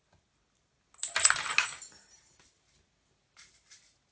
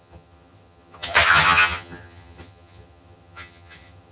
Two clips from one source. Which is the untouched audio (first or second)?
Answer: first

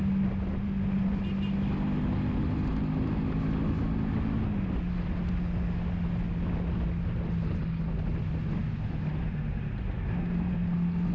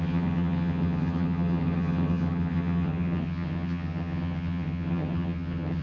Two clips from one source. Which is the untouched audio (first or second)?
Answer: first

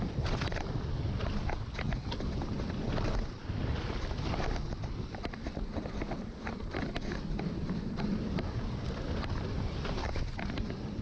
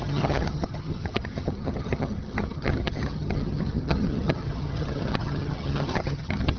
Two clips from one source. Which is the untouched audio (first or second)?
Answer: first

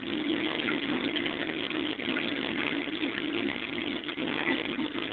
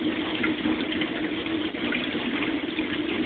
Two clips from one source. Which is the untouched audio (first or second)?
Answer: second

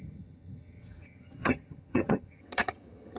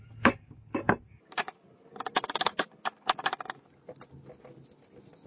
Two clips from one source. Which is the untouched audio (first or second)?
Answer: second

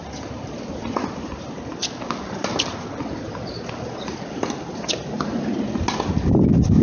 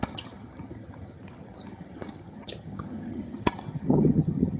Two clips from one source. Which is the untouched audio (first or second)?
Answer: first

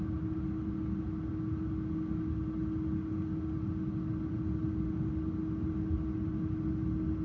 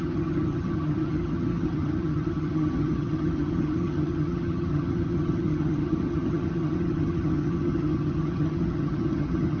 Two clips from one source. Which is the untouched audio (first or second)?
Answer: first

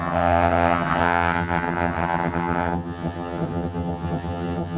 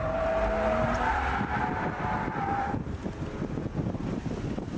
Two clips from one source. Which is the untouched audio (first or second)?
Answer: second